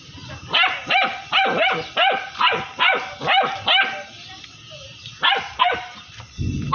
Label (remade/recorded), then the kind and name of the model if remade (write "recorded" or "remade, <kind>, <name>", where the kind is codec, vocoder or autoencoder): recorded